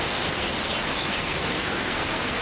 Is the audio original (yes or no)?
no